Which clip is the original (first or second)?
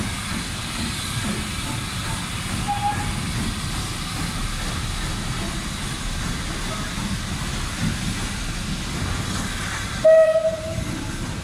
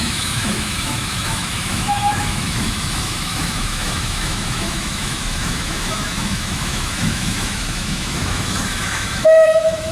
first